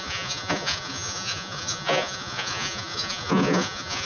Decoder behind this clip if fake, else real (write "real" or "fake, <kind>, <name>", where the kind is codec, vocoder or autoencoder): fake, vocoder, Vocos